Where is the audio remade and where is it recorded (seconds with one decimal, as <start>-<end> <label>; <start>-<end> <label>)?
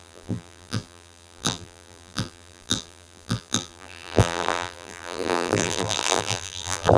0.0-7.0 remade